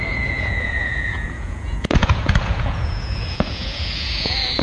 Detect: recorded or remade remade